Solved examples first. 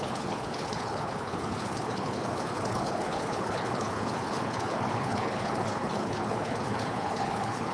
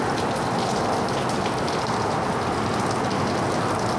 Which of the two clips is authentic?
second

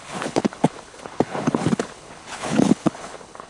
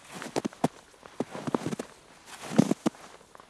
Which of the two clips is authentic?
second